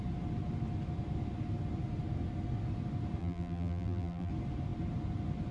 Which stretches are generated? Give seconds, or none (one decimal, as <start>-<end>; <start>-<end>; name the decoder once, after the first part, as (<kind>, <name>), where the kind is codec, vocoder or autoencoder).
3.2-4.3 (vocoder, BigVGAN v2)